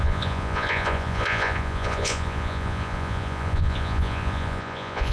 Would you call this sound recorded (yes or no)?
no